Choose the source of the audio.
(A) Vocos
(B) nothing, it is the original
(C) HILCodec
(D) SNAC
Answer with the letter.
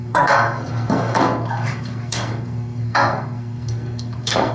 D